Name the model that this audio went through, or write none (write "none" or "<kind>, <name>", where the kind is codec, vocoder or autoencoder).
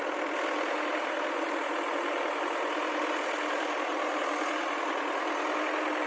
none